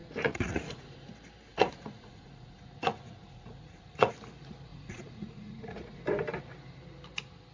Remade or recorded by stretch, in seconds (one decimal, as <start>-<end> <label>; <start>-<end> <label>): 0.0-1.1 remade; 1.1-1.5 recorded; 1.5-4.1 remade; 4.1-4.7 recorded; 4.7-6.0 remade; 6.0-7.5 recorded